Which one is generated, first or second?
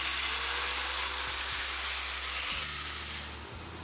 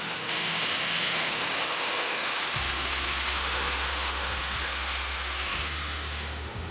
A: second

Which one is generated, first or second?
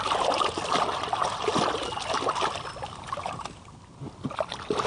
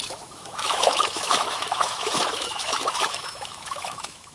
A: second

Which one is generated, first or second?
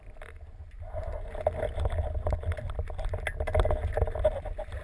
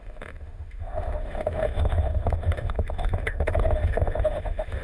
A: second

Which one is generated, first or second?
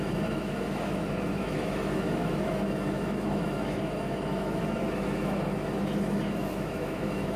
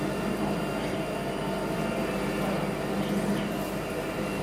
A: first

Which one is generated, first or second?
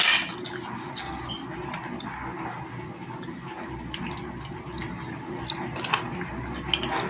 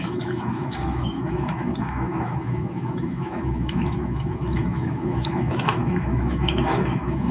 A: second